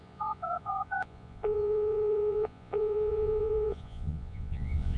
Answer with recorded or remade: remade